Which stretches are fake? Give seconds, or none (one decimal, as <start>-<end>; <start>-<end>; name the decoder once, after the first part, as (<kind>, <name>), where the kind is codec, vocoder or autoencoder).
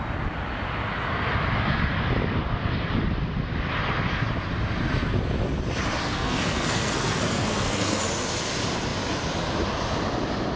6.1-8.0 (codec, SNAC)